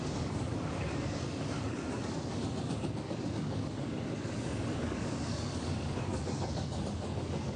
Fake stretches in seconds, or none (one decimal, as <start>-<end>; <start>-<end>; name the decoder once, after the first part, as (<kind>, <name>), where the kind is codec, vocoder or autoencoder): 0.0-7.6 (codec, DAC)